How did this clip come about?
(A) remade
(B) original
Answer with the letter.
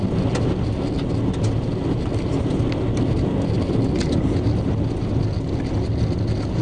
B